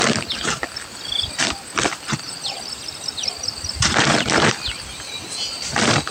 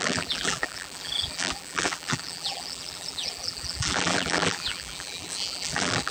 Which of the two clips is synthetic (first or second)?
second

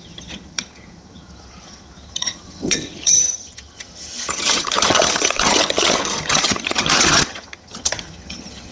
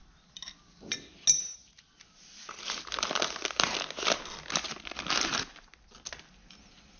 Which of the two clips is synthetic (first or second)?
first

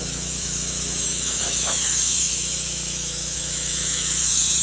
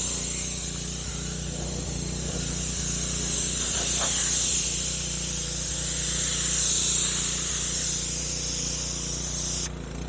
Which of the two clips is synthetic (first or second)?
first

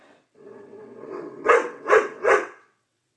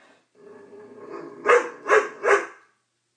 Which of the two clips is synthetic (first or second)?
first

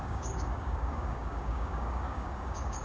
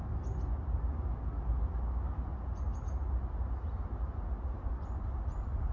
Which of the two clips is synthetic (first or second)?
first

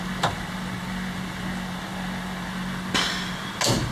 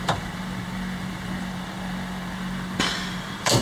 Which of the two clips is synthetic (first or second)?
second